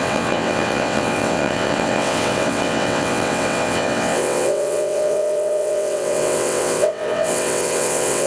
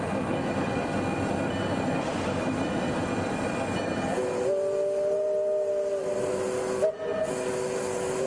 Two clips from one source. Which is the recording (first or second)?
second